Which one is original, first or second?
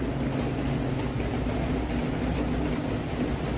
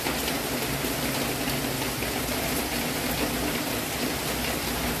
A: first